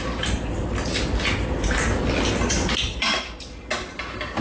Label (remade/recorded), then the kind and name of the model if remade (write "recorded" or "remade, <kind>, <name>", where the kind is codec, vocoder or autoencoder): recorded